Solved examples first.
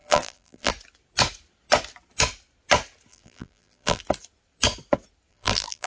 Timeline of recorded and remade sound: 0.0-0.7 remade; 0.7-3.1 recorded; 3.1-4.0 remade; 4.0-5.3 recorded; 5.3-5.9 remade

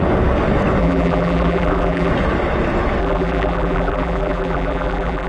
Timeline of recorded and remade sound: 0.0-0.8 recorded; 0.8-2.1 remade; 2.1-3.0 recorded; 3.0-5.3 remade

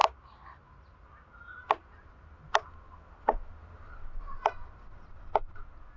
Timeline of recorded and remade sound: 0.0-6.0 recorded

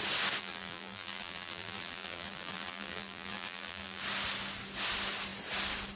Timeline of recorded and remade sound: 0.0-0.4 recorded; 0.4-4.0 remade; 4.0-6.0 recorded

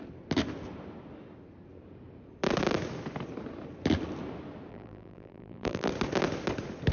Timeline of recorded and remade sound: 0.0-4.7 recorded; 4.7-5.9 remade; 5.9-6.9 recorded

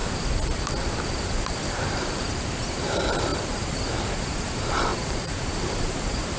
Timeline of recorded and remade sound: 0.0-1.6 recorded; 1.6-3.3 remade; 3.3-4.1 recorded; 4.1-6.4 remade

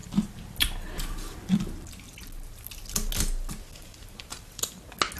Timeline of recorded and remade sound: 0.0-3.8 recorded; 3.8-4.7 remade; 4.7-5.2 recorded

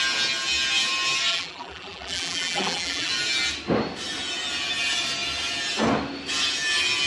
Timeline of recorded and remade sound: 0.0-1.3 recorded; 1.3-3.1 remade; 3.1-7.1 recorded